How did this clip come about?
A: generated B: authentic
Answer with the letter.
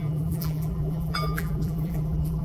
A